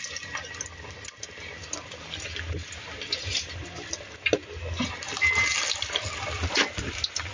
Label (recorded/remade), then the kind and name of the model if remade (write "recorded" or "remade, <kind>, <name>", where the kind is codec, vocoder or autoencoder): recorded